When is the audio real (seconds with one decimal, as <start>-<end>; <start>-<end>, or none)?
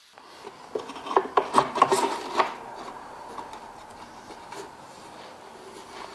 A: 0.0-6.1